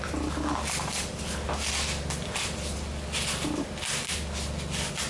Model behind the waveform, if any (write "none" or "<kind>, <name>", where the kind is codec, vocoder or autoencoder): none